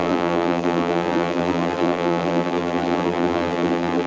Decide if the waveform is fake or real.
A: fake